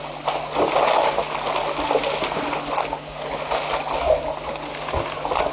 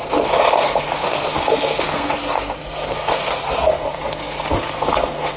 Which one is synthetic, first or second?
second